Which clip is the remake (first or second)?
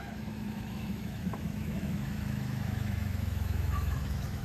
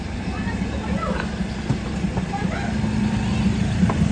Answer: first